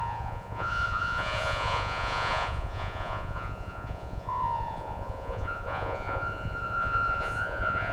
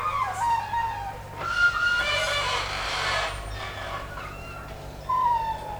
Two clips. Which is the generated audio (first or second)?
first